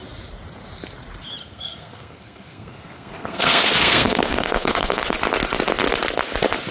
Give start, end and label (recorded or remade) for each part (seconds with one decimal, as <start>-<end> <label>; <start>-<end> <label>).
0.0-1.4 recorded; 1.4-5.0 remade; 5.0-6.7 recorded